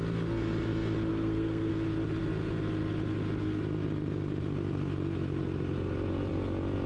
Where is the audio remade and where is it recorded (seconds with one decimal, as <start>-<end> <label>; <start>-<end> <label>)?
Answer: 0.0-1.1 recorded; 1.1-1.7 remade; 1.7-6.9 recorded